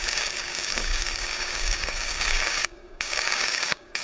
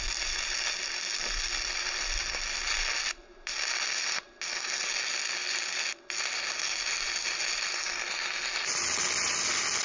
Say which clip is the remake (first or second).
first